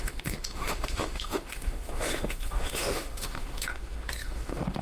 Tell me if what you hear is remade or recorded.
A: remade